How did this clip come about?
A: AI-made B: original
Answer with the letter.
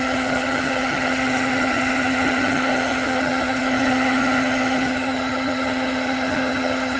A